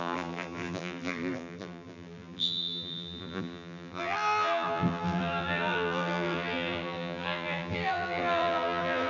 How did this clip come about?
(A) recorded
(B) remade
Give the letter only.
B